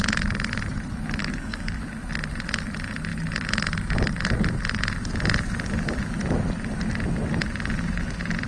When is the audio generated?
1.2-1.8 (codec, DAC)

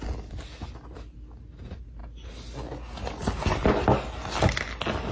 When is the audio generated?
none

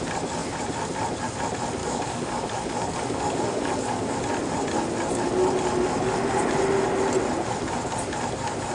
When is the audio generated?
1.8-4.2 (codec, DAC)

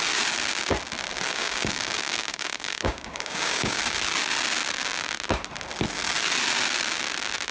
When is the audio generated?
1.3-3.8 (codec, DAC)

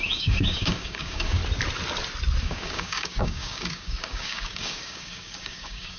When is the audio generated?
0.0-1.4 (codec, DAC); 2.4-6.0

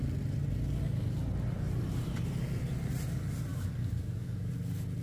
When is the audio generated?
3.5-4.5 (codec, DAC)